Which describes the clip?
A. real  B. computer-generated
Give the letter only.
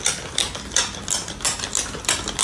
A